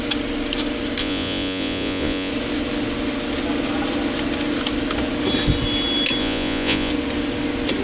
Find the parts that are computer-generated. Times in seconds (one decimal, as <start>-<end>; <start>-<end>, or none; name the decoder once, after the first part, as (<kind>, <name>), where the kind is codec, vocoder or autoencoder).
1.0-2.3 (vocoder, Vocos); 6.2-6.9